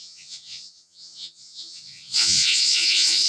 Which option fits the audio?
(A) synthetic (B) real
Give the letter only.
A